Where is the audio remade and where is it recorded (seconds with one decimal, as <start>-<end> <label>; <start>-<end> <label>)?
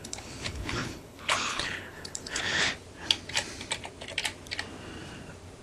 0.0-2.7 remade; 2.7-5.6 recorded